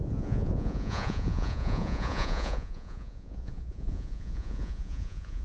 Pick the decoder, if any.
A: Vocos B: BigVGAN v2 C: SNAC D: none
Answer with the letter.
A